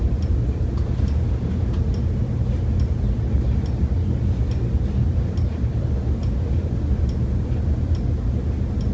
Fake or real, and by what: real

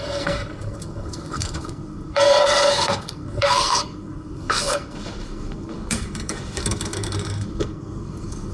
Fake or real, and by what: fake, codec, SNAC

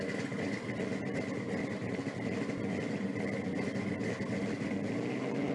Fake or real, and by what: real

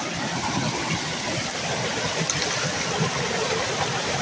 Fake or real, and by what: real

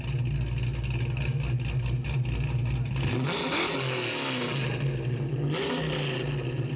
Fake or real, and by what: real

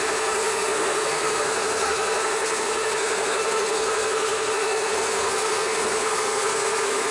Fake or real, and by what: fake, codec, SNAC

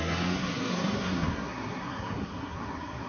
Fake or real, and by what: fake, codec, SNAC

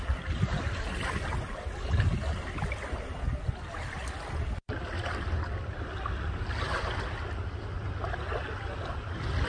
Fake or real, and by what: real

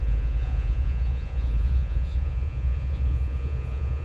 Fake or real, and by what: fake, vocoder, Vocos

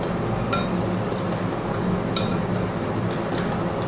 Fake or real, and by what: real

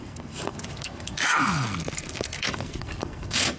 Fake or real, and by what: fake, codec, SNAC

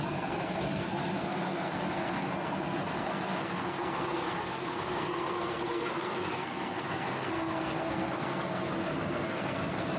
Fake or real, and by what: fake, codec, SNAC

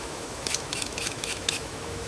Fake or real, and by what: fake, autoencoder, DAC-VAE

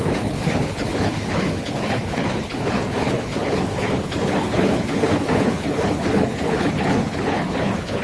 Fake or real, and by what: fake, codec, HILCodec